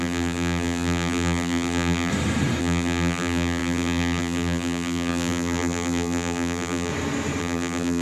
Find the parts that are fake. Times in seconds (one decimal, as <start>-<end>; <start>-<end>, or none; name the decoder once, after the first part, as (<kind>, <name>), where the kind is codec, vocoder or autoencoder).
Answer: 0.0-2.1 (vocoder, BigVGAN v2); 2.6-6.9; 7.4-8.0